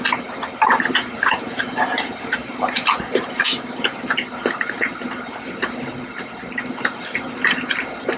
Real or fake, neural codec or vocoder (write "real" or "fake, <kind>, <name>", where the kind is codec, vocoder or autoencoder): real